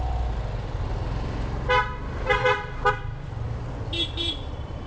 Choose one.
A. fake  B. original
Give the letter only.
B